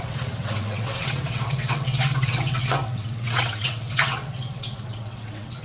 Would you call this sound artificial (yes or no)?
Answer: yes